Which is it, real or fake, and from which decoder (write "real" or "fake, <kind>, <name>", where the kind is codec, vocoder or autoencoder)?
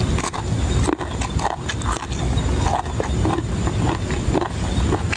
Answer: real